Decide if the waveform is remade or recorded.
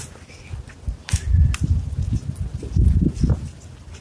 recorded